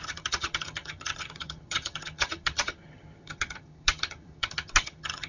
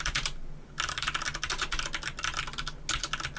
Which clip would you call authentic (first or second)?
second